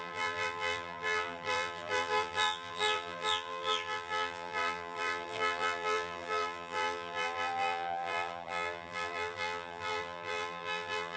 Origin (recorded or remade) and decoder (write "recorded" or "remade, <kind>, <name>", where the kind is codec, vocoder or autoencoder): remade, vocoder, BigVGAN v2